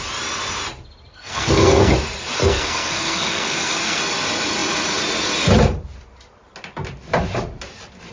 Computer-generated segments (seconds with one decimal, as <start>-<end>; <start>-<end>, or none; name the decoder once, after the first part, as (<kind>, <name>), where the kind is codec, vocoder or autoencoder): 1.1-1.9 (codec, SNAC); 2.4-4.0

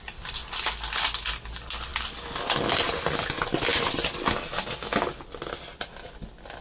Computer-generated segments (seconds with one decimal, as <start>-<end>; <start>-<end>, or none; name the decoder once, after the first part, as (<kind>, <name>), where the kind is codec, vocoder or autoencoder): none

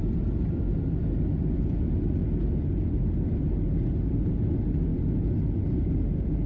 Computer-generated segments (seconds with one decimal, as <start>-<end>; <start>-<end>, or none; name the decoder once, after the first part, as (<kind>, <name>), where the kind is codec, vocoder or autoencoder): none

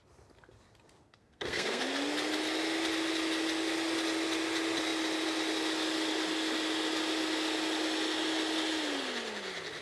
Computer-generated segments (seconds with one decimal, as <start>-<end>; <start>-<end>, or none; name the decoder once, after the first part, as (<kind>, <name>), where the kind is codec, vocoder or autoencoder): 1.0-1.8 (codec, SNAC)

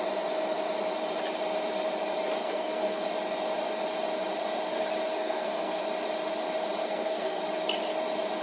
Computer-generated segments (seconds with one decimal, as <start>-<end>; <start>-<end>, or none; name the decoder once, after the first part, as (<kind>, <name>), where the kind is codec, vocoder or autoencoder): 2.4-3.0 (codec, SNAC); 5.1-5.8; 6.8-7.4

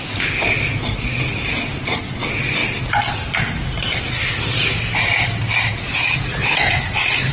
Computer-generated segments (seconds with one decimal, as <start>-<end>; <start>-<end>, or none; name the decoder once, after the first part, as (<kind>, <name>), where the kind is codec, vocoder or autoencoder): none

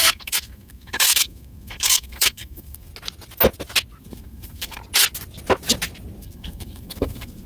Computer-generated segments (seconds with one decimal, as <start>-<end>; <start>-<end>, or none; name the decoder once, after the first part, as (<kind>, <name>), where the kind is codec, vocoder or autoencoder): 0.0-2.9 (codec, SNAC); 4.0-4.8; 6.2-7.5

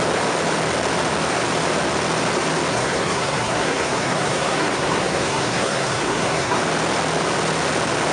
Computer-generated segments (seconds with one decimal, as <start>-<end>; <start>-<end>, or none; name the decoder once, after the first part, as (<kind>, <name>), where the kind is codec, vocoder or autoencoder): 2.7-6.6 (codec, SNAC)